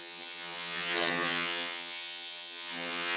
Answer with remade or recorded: remade